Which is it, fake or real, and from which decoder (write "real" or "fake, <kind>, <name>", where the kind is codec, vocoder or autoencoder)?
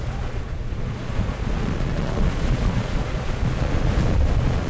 fake, vocoder, Vocos